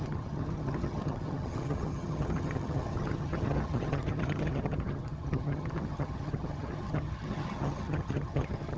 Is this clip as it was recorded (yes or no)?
no